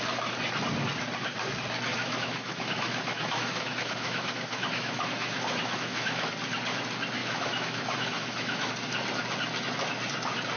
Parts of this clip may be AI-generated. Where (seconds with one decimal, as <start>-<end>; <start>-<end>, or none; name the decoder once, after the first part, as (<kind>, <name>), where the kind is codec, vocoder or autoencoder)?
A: 1.9-6.3 (autoencoder, DAC-VAE); 7.2-8.7